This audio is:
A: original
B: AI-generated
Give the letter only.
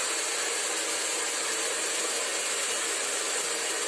A